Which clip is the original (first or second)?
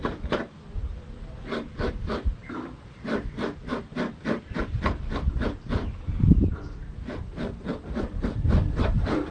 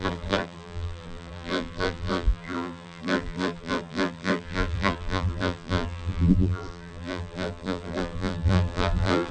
first